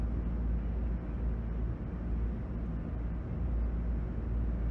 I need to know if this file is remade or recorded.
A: recorded